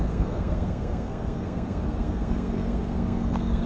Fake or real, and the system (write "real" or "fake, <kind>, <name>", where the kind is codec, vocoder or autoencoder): fake, codec, SNAC